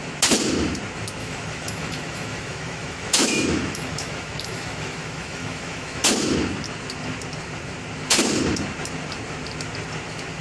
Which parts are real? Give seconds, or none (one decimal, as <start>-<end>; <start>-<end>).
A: 0.0-1.2; 6.1-10.4